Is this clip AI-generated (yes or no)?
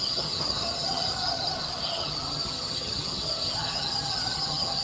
yes